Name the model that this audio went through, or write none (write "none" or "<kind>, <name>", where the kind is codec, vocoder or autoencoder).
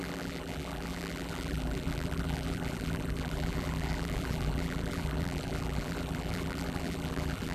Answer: vocoder, BigVGAN v2